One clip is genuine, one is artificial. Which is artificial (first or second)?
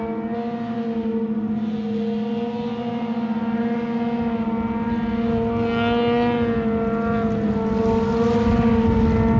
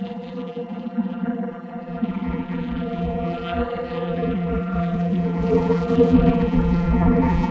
second